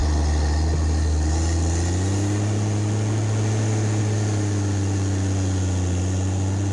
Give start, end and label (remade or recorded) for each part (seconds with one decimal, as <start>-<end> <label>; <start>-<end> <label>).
0.0-6.7 recorded